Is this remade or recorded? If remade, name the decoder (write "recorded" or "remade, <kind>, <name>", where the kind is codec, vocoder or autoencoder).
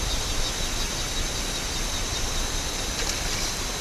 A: recorded